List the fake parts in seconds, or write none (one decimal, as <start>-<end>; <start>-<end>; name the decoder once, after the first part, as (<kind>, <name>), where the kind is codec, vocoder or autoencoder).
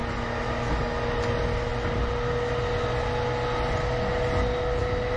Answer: none